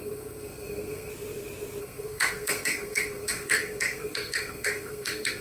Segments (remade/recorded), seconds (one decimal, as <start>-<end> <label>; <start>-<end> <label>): 0.0-1.1 remade; 1.1-1.8 recorded; 1.8-5.4 remade